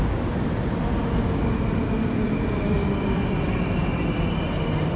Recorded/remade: recorded